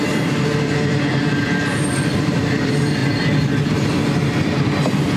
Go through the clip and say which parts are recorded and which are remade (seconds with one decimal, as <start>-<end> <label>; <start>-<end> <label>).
0.0-3.0 remade; 3.0-4.8 recorded; 4.8-5.2 remade